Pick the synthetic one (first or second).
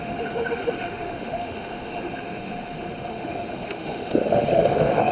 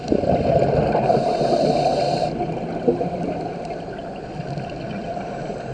first